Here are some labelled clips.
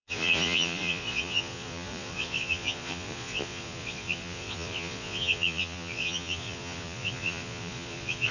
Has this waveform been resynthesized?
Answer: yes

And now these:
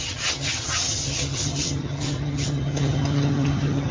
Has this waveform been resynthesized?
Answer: yes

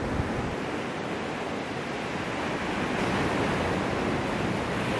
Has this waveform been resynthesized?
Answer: no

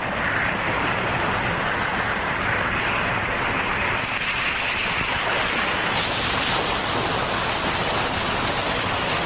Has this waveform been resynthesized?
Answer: no